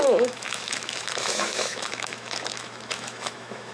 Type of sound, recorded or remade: remade